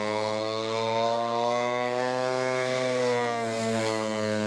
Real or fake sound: fake